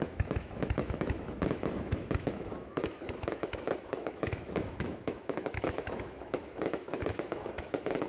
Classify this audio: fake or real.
fake